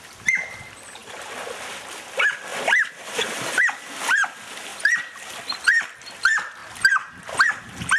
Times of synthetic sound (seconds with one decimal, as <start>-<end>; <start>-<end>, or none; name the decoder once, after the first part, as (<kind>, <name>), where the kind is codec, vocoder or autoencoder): 1.0-1.6 (vocoder, BigVGAN v2); 2.5-3.6; 4.7-5.3